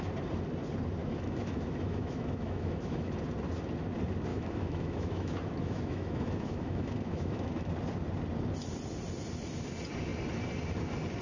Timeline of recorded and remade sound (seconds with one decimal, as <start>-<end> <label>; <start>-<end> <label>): 0.0-1.0 recorded; 1.0-3.1 remade; 3.1-4.3 recorded; 4.3-7.7 remade; 7.7-11.2 recorded